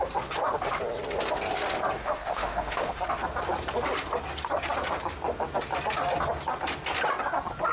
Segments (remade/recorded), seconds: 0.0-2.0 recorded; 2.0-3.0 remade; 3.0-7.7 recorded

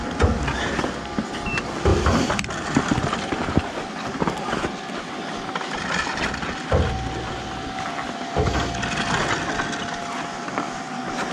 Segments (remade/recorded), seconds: 0.0-1.9 recorded; 1.9-6.2 remade; 6.2-11.3 recorded

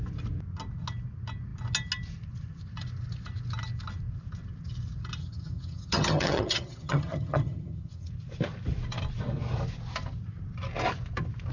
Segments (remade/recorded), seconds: 0.0-5.2 recorded; 5.2-8.1 remade; 8.1-11.5 recorded

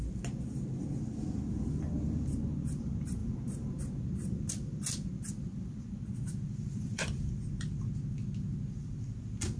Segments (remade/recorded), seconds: 0.0-6.7 recorded; 6.7-7.3 remade; 7.3-9.6 recorded

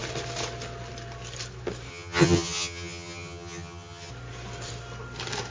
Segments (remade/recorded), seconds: 0.0-1.9 recorded; 1.9-4.1 remade; 4.1-5.5 recorded